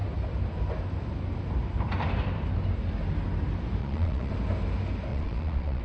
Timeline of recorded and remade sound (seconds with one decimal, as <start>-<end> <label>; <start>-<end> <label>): 0.0-3.8 recorded; 3.8-4.3 remade; 4.3-5.1 recorded; 5.1-5.8 remade